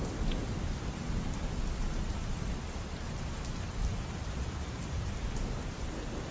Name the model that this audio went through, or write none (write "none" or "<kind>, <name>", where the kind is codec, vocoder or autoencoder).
none